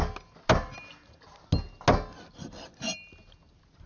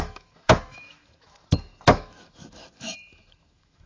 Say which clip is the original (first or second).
first